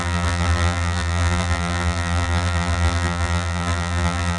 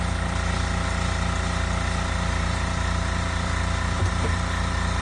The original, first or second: second